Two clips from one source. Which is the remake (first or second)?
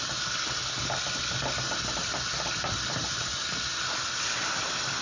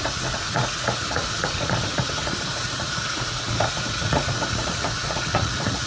second